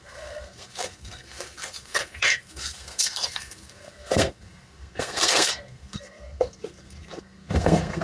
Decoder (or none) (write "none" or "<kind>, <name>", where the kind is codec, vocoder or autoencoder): codec, SNAC